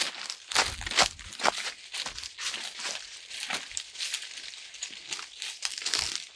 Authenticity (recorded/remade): recorded